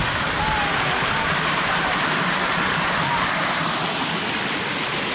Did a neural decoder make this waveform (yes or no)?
no